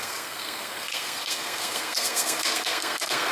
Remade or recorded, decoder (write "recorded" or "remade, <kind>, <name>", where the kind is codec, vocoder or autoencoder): remade, codec, SNAC